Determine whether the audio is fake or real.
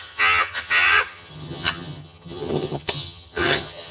fake